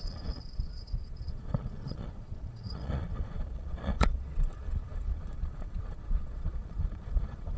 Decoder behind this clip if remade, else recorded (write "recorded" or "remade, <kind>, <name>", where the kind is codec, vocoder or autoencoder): remade, vocoder, Vocos